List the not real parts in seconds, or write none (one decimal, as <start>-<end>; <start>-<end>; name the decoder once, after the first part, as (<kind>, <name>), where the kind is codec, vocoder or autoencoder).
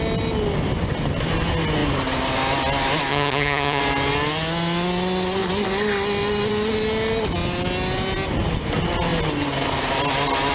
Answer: 3.1-3.8 (vocoder, HiFi-GAN)